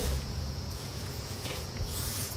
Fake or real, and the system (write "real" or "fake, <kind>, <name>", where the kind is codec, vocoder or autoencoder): fake, vocoder, Vocos